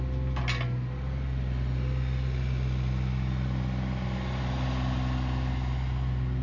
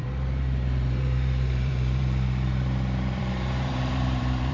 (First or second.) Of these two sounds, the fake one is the second